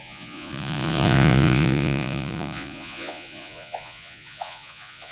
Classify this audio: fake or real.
fake